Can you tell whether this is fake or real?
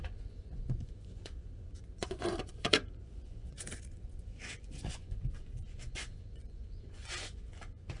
fake